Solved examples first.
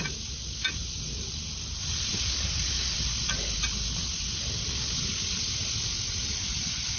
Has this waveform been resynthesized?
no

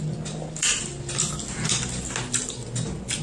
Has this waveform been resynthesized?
no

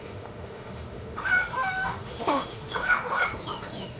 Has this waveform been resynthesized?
yes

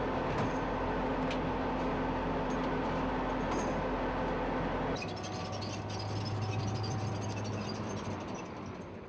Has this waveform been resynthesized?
no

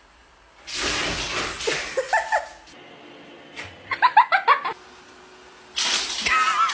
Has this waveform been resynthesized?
no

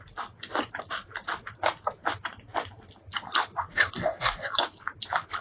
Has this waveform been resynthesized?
no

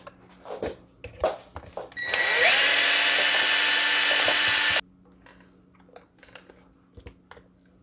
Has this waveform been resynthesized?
no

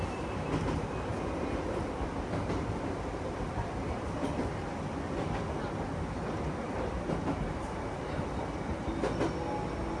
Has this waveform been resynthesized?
no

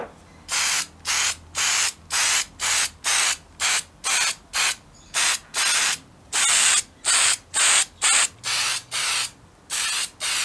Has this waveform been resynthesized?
no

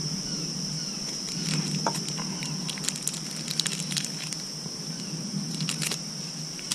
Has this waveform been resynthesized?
no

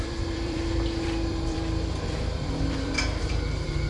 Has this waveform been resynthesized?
yes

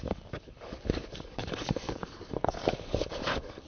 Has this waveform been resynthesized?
yes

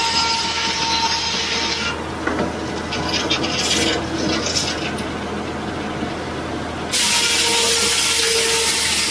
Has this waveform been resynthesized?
no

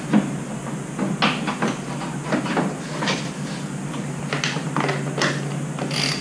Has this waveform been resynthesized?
no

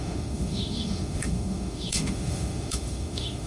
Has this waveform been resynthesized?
yes